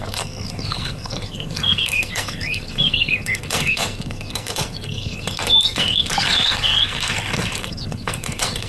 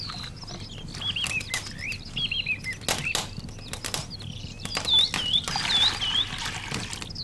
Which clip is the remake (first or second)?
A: first